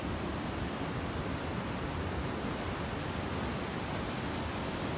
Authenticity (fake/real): real